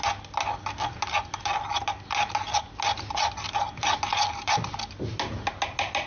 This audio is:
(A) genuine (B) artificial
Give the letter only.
A